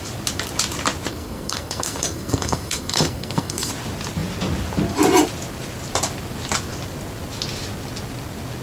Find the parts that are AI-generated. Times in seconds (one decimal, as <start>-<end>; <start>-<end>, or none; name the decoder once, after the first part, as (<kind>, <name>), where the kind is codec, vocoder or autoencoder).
1.1-3.7 (codec, SNAC)

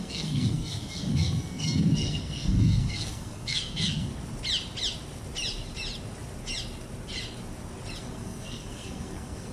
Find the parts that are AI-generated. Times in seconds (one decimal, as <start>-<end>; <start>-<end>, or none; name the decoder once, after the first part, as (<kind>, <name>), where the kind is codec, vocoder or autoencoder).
0.0-4.1 (codec, SNAC); 8.0-9.5

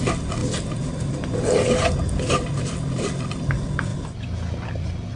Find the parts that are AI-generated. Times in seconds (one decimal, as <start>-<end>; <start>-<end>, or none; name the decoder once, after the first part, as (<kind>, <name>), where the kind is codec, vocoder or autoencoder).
none

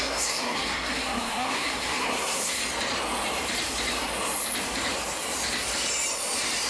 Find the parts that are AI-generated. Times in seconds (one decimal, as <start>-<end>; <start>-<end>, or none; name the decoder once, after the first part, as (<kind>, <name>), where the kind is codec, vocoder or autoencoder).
0.0-2.6 (codec, SNAC)

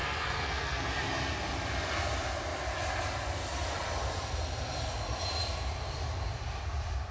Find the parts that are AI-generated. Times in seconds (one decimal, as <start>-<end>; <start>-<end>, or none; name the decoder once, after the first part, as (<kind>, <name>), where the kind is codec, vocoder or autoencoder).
0.0-0.9 (codec, SNAC)